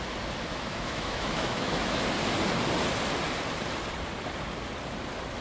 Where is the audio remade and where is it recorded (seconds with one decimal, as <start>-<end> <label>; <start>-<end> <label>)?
0.0-0.5 recorded; 0.5-2.0 remade; 2.0-5.4 recorded